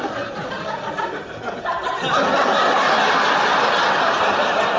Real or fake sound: real